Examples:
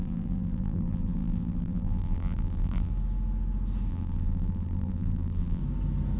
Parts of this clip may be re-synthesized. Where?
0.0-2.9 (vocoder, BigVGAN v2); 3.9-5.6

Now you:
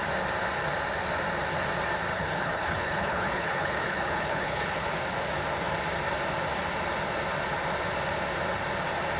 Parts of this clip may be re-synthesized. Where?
2.1-4.9 (codec, HILCodec)

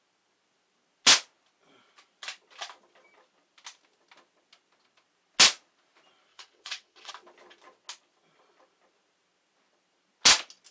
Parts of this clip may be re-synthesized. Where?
6.3-7.1 (vocoder, WaveNeXt)

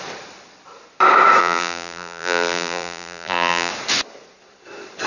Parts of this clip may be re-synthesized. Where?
1.4-3.7 (vocoder, BigVGAN v2)

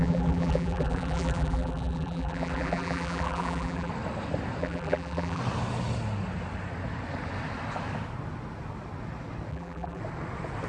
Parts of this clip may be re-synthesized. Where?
0.0-3.9 (vocoder, BigVGAN v2); 4.6-5.4; 9.5-10.0

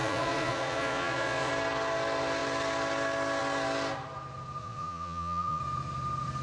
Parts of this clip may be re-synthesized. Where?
0.0-1.5 (vocoder, Vocos); 4.6-5.6

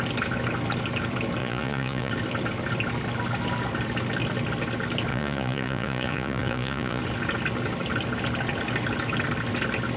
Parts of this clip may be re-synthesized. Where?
1.4-2.1 (vocoder, Vocos); 5.1-7.0